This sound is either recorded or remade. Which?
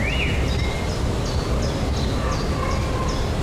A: recorded